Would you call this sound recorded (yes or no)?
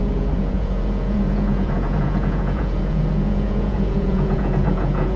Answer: no